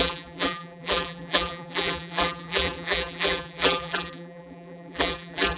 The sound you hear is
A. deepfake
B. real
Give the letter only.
A